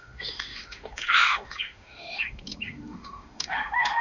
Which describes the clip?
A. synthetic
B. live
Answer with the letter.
A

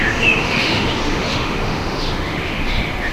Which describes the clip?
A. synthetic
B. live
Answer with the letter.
A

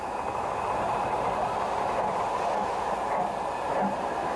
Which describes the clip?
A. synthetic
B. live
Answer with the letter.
B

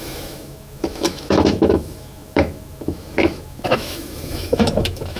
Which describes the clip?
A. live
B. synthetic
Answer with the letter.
B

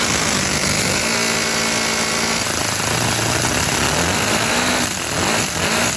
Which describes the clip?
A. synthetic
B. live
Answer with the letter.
B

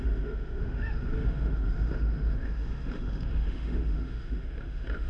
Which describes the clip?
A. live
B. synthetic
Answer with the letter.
B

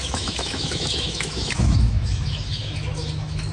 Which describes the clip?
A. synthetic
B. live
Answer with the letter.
A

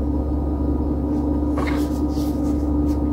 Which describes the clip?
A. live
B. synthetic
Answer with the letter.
A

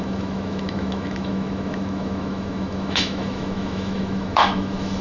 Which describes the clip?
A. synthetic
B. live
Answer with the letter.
A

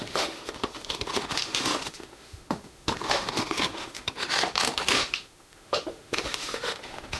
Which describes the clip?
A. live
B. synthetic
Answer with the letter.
B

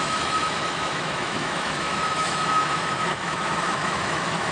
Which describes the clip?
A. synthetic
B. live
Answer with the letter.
A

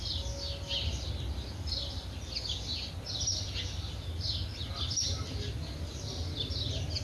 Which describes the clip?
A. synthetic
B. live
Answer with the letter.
B